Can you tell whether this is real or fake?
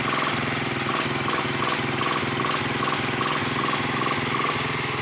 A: real